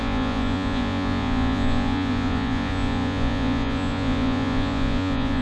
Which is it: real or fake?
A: fake